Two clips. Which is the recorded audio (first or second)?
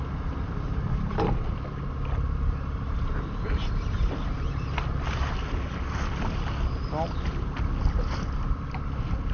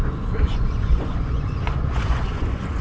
first